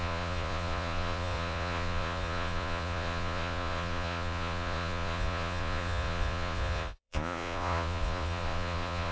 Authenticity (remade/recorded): remade